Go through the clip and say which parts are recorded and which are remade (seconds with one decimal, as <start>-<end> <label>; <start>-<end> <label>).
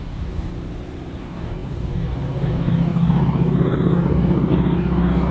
0.0-0.5 remade; 0.5-1.2 recorded; 1.2-5.3 remade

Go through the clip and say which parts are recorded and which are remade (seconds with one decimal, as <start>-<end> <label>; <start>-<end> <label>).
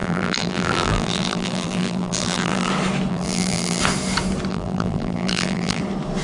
0.0-2.7 remade; 2.7-3.1 recorded; 3.1-3.8 remade; 3.8-4.5 recorded; 4.5-5.8 remade; 5.8-6.2 recorded